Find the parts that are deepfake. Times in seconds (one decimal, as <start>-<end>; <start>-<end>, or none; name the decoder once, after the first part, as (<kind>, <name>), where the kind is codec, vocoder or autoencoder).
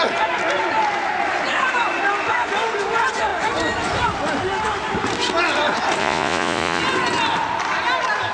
6.0-6.8 (vocoder, Vocos)